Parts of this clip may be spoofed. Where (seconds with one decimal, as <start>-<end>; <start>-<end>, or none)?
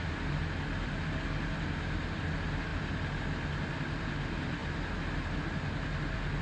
none